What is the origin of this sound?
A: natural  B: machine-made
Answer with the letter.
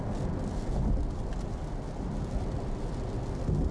A